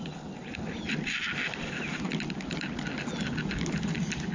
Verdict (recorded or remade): recorded